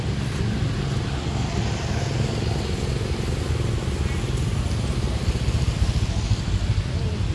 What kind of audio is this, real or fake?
real